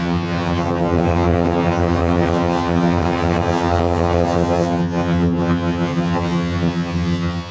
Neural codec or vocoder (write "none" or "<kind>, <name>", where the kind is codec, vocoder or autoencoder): vocoder, HiFi-GAN